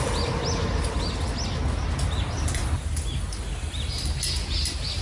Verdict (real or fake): real